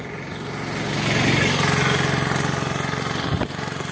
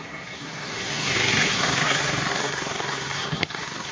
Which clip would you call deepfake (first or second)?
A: second